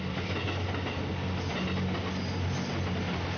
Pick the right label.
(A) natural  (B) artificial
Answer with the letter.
A